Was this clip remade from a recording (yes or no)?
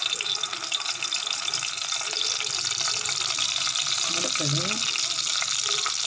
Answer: no